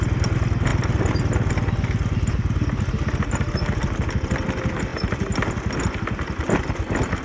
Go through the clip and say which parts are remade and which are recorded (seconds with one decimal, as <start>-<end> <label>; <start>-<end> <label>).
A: 0.0-7.2 recorded